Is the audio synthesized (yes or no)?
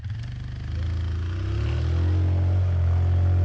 no